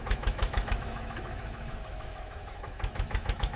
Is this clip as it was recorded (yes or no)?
no